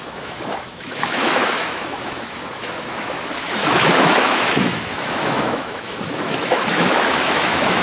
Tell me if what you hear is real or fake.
fake